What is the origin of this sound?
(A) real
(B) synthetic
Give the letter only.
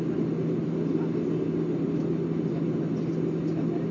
A